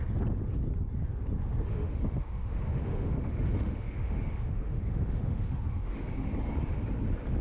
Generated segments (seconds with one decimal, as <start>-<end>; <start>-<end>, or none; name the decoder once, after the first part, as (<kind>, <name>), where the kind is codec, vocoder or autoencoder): 1.7-6.1 (autoencoder, DAC-VAE)